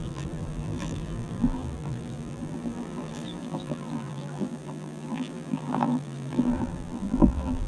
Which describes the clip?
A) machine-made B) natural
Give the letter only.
A